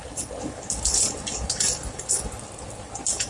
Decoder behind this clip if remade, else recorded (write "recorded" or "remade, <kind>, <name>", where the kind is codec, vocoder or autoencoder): recorded